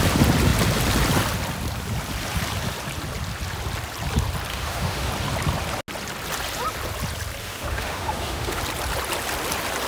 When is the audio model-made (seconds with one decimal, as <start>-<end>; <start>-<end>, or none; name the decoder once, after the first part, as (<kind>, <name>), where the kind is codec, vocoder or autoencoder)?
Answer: 4.5-5.1 (autoencoder, DAC-VAE); 7.4-8.6